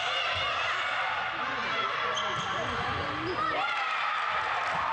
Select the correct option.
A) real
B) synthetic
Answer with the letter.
A